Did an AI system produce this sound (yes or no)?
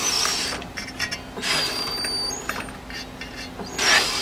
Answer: no